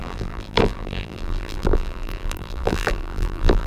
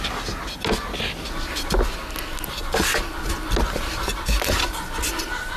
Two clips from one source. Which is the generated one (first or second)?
first